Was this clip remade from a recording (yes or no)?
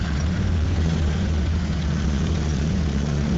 yes